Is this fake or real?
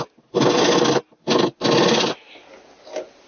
real